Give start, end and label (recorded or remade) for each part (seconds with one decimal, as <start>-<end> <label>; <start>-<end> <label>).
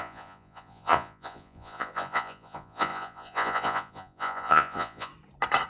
0.0-5.1 remade; 5.1-5.7 recorded